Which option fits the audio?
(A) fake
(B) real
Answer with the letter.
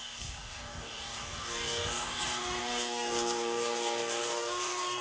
A